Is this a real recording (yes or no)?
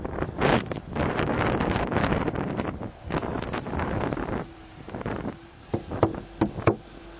no